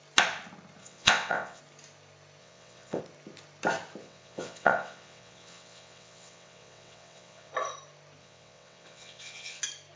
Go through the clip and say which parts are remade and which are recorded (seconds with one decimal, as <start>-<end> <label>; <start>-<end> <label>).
0.0-0.8 recorded; 0.8-1.6 remade; 1.6-2.4 recorded; 2.4-3.0 remade; 3.0-4.0 recorded; 4.0-7.5 remade; 7.5-8.2 recorded; 8.2-9.6 remade; 9.6-10.0 recorded

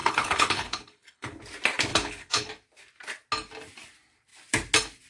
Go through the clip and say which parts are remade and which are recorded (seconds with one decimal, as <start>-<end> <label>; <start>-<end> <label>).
0.0-1.4 remade; 1.4-1.9 recorded; 1.9-2.5 remade; 2.5-5.1 recorded